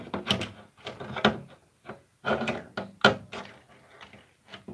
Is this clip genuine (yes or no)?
yes